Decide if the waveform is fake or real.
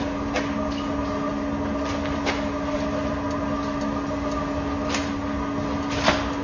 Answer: real